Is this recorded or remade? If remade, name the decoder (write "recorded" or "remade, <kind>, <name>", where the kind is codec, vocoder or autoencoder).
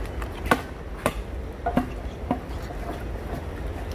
recorded